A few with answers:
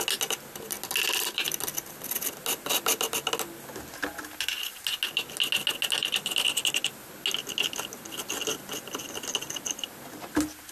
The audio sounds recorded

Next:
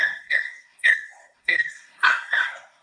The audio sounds remade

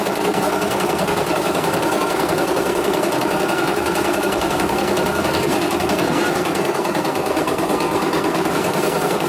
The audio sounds remade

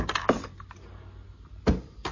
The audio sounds recorded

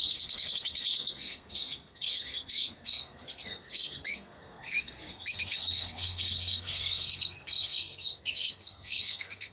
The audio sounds remade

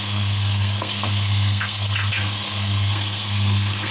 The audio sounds remade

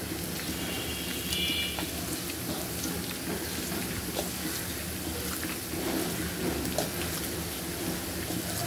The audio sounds recorded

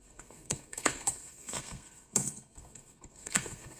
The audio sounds remade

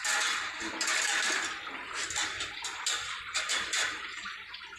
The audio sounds recorded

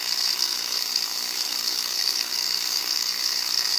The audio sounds remade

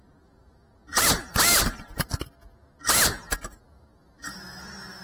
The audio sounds recorded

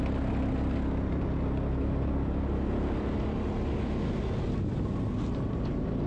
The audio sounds recorded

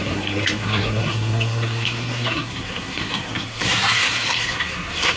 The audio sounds remade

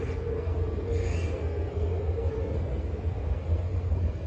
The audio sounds remade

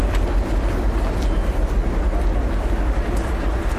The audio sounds recorded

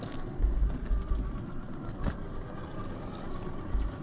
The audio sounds recorded